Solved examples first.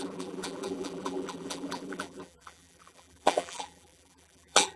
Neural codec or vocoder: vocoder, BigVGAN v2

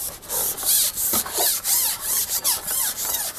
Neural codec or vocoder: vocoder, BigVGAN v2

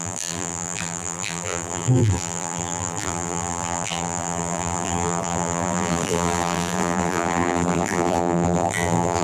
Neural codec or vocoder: vocoder, BigVGAN v2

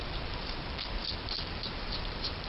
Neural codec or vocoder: vocoder, BigVGAN v2